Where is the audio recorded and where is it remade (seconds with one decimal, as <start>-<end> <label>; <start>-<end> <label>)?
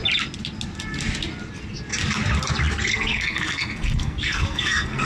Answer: 0.0-2.9 recorded; 2.9-5.1 remade